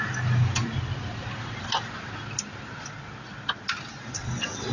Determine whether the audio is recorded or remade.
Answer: recorded